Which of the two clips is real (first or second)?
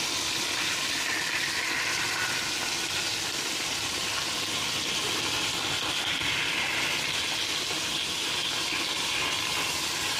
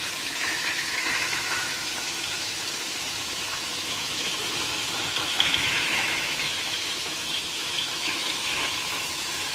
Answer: first